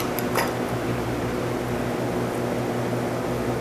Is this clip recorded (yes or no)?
yes